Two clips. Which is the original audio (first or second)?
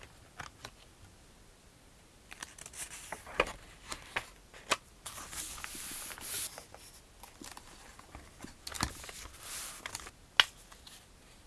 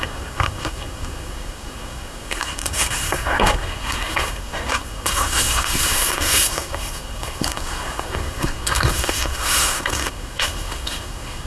first